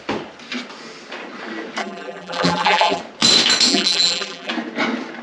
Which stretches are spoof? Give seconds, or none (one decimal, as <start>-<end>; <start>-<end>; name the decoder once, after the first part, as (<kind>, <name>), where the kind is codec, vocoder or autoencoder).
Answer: 1.8-3.0 (vocoder, BigVGAN v2); 3.7-4.5